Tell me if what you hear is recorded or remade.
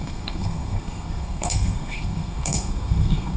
remade